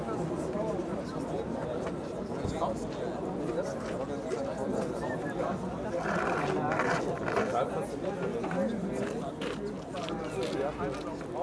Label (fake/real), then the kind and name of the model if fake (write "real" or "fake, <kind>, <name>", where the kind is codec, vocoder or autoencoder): real